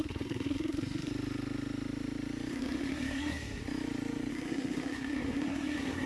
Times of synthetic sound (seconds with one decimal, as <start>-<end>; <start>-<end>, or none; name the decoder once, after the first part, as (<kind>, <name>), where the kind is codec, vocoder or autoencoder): 0.0-1.1 (codec, SNAC); 2.5-3.6; 4.3-6.1